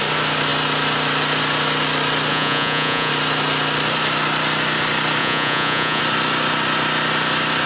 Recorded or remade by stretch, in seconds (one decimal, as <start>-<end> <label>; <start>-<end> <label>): 0.0-2.3 recorded; 2.3-3.1 remade; 3.1-5.2 recorded; 5.2-6.0 remade; 6.0-7.7 recorded

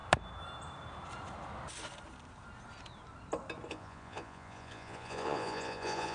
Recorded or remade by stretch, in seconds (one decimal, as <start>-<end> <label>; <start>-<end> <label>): 0.0-3.7 recorded; 3.7-6.1 remade

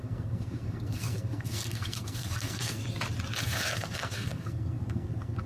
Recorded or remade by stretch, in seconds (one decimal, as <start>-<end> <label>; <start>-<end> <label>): 0.0-2.8 remade; 2.8-3.4 recorded; 3.4-5.5 remade

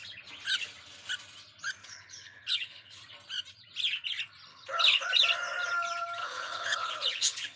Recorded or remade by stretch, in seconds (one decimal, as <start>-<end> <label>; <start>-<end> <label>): 0.0-1.8 recorded; 1.8-3.0 remade; 3.0-4.5 recorded; 4.5-5.1 remade; 5.1-6.2 recorded; 6.2-7.6 remade

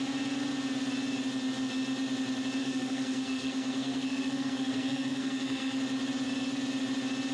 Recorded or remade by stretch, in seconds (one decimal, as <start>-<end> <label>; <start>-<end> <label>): 0.0-2.6 recorded; 2.6-5.8 remade; 5.8-7.3 recorded

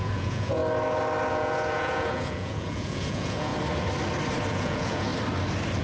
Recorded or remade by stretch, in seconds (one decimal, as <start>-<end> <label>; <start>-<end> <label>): 0.0-0.6 remade; 0.6-1.3 recorded; 1.3-3.5 remade; 3.5-4.5 recorded; 4.5-5.1 remade; 5.1-5.8 recorded

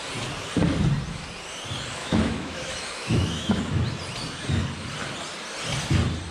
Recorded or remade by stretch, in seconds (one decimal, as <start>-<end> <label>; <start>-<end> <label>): 0.0-2.0 recorded; 2.0-3.6 remade; 3.6-6.3 recorded

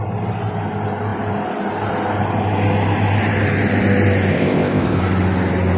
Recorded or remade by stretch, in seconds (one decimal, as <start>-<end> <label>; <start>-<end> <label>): 0.0-4.3 recorded; 4.3-5.0 remade; 5.0-5.8 recorded